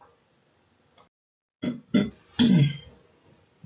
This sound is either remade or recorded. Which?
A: recorded